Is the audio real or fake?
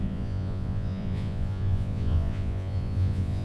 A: fake